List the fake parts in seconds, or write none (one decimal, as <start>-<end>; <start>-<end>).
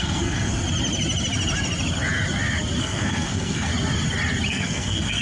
0.0-0.6; 2.8-3.7; 4.5-5.2